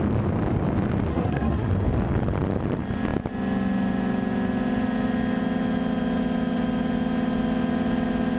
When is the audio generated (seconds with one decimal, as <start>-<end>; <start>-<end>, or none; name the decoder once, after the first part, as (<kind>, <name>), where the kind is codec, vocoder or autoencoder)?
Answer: 1.1-1.7 (codec, SNAC)